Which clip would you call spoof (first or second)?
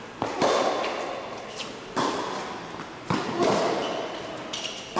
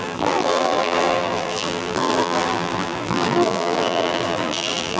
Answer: second